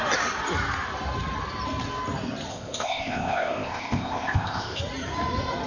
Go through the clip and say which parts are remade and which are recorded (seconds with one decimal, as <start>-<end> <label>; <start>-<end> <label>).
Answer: 0.0-2.5 recorded; 2.5-4.8 remade; 4.8-5.7 recorded